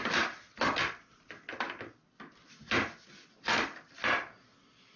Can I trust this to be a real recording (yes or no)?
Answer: yes